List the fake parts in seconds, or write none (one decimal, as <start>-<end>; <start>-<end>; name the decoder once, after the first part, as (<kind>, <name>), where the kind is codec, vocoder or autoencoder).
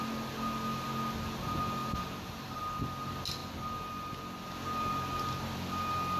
1.8-2.6 (vocoder, BigVGAN v2)